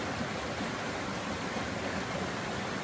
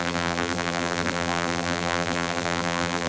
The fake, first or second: second